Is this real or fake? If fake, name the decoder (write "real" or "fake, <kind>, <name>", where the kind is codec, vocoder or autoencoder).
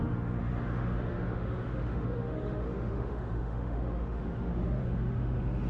fake, autoencoder, DAC-VAE